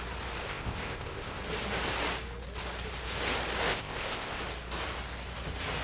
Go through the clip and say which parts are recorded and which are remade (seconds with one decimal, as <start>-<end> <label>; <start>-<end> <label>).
0.0-0.4 recorded; 0.4-1.4 remade; 1.4-3.7 recorded; 3.7-4.4 remade; 4.4-5.8 recorded